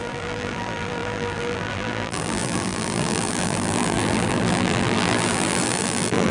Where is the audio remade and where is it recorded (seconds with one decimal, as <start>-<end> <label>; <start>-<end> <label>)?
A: 0.0-6.3 remade